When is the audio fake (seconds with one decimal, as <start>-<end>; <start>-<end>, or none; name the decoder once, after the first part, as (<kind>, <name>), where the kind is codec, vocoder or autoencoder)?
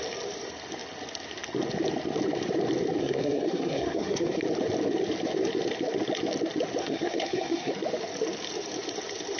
3.0-4.4 (codec, SNAC); 6.8-7.7